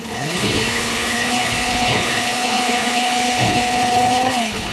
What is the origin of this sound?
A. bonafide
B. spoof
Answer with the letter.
B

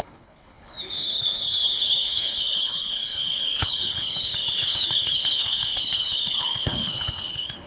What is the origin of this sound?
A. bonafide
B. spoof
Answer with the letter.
B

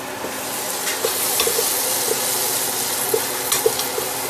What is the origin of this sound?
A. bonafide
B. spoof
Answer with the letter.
A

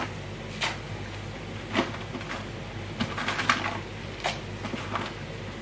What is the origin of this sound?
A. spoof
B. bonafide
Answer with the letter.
B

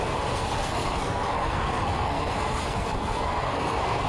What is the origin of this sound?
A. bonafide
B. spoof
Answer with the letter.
B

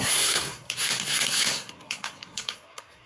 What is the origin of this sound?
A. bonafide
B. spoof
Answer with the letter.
B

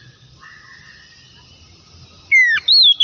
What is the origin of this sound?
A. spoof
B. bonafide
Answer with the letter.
B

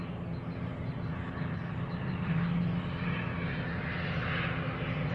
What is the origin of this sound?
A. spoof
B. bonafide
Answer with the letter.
B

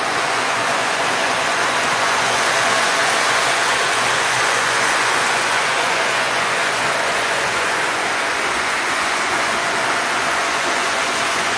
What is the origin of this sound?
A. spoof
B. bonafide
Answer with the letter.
A